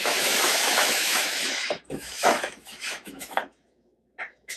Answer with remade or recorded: remade